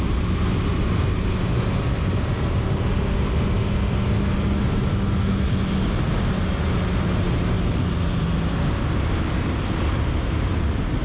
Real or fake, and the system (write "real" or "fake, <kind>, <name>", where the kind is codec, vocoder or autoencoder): real